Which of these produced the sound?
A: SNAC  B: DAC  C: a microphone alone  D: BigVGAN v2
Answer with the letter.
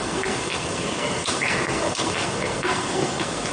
A